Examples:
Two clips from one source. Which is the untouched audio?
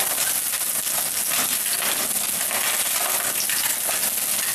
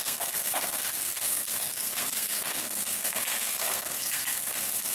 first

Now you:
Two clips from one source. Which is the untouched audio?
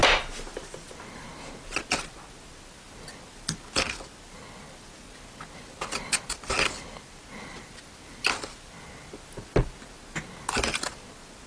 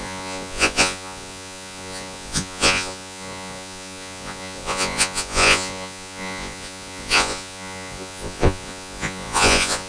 first